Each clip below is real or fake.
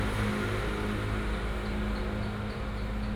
real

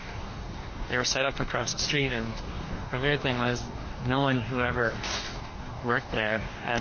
fake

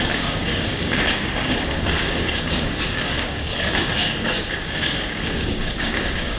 fake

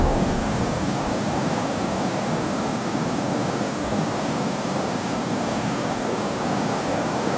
fake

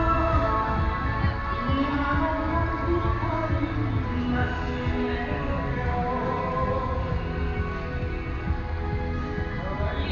real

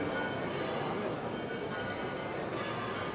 real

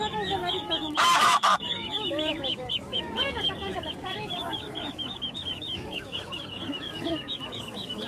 fake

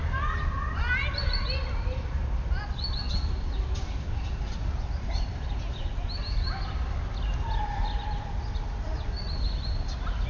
real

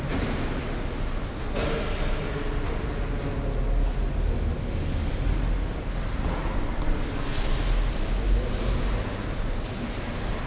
real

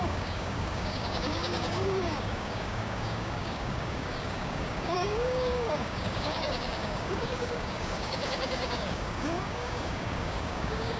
fake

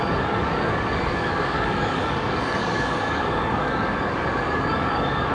fake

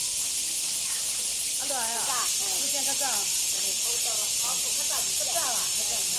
real